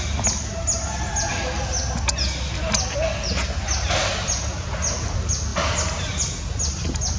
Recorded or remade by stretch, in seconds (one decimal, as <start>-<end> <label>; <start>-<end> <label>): 0.0-7.2 recorded